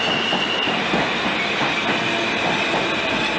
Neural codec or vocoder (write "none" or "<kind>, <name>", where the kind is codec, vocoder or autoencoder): none